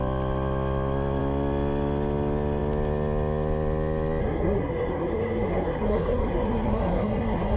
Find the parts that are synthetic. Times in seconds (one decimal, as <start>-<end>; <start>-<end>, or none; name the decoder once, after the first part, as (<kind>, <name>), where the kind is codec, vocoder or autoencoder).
4.2-7.6 (codec, SNAC)